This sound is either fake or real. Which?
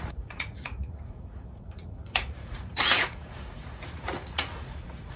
fake